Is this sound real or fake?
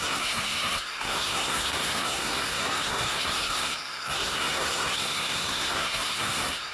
fake